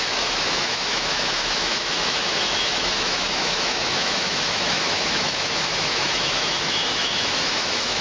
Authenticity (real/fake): fake